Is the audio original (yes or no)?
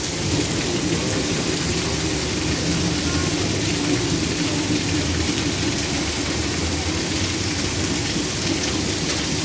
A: yes